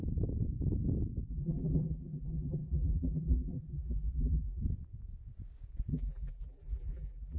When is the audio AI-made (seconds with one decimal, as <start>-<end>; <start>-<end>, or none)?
1.3-4.6; 5.9-7.4